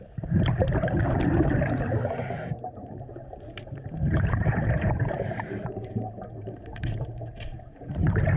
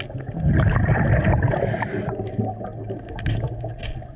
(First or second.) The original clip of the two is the second